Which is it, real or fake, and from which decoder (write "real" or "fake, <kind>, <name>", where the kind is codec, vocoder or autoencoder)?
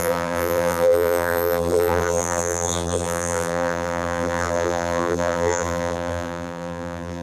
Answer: fake, vocoder, BigVGAN v2